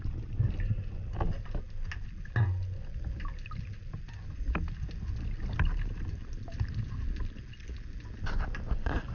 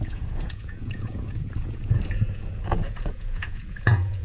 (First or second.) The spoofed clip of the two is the second